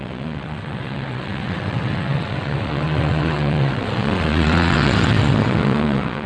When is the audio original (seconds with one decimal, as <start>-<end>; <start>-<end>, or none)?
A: none